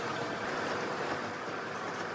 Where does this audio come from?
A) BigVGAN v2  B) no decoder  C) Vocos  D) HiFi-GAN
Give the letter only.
B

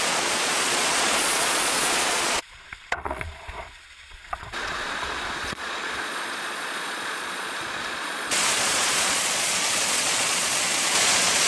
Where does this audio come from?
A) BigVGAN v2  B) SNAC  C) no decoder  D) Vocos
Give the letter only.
D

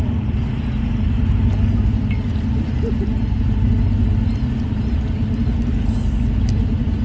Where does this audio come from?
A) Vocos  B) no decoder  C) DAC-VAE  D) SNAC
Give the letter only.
B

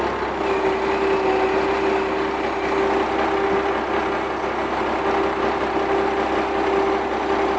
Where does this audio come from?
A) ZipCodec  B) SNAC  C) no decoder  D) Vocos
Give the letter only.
C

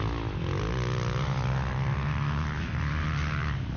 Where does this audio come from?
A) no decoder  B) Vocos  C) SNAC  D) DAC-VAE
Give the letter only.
A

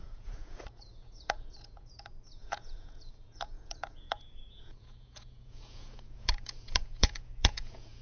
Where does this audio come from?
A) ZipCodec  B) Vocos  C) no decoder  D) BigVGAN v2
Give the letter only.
B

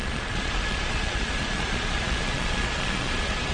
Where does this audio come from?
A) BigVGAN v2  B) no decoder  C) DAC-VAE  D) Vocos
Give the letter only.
D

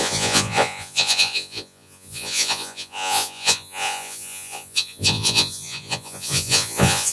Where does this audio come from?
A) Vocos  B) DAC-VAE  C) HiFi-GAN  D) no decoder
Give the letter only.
A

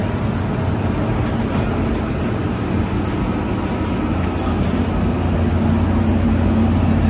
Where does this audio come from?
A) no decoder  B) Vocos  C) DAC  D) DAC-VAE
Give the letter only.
A